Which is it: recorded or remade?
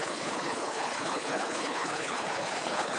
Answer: remade